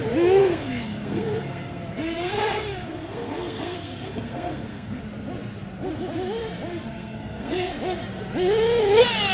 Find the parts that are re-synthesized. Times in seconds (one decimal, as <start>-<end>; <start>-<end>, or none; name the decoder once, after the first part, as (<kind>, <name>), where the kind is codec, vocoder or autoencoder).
0.4-5.0 (codec, SNAC); 6.9-7.7